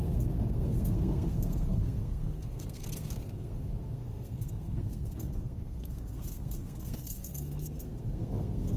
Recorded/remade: remade